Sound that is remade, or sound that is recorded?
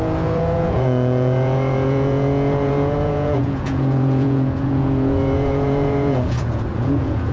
remade